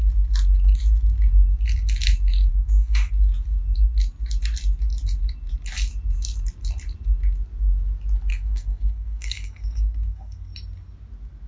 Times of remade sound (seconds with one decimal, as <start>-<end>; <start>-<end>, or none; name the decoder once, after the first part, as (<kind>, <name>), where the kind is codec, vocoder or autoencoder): 2.5-3.1 (codec, SNAC); 8.3-10.5